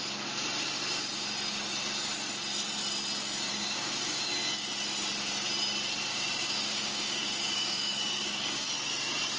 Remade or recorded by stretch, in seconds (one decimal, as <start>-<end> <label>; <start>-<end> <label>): 0.0-3.5 recorded; 3.5-4.3 remade; 4.3-6.1 recorded; 6.1-8.7 remade; 8.7-9.4 recorded